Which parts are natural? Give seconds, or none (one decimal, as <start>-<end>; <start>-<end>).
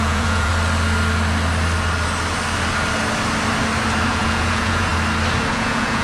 0.5-4.1; 4.9-5.5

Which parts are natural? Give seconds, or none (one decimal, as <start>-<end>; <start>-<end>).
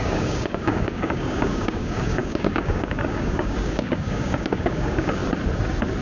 5.2-6.0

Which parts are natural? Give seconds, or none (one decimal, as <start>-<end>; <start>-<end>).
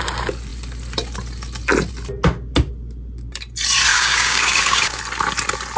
0.0-3.9; 5.0-5.8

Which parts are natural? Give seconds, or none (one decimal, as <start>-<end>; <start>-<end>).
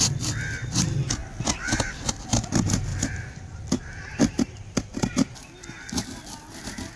0.0-2.9; 6.4-7.0